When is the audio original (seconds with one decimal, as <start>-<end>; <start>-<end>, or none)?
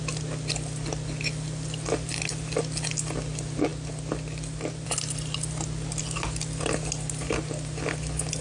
0.0-8.4